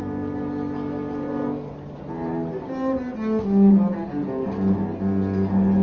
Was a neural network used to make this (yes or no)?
no